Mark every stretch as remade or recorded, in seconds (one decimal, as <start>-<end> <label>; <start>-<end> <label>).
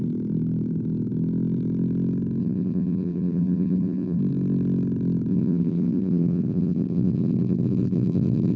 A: 0.0-2.4 recorded; 2.4-4.2 remade; 4.2-5.3 recorded; 5.3-8.6 remade